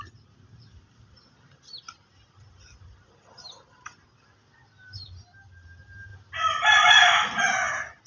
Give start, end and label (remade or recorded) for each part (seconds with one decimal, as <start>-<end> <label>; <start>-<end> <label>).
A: 0.0-8.1 recorded